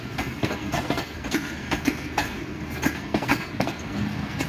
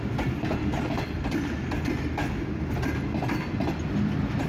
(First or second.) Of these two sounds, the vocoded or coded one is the first